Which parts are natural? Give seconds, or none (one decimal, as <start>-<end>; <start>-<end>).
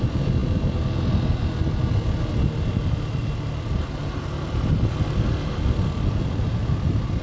0.0-7.2